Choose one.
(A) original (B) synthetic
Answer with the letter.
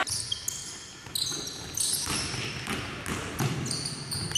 A